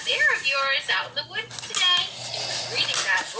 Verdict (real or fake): real